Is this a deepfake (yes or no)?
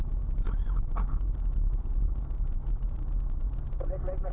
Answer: no